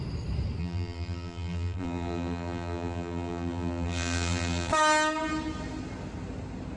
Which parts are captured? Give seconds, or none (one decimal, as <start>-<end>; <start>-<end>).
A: 0.0-0.6; 4.7-6.8